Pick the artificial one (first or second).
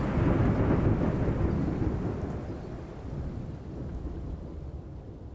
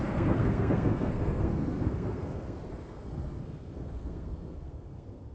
second